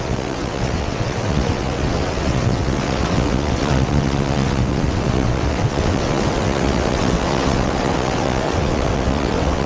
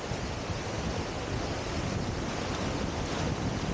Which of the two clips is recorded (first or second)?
second